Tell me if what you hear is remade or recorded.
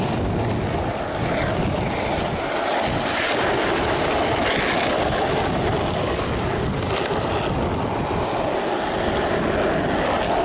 recorded